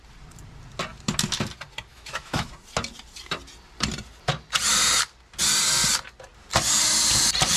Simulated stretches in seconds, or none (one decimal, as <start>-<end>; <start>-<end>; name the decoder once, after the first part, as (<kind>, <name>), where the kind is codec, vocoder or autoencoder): 1.9-2.5 (autoencoder, DAC-VAE)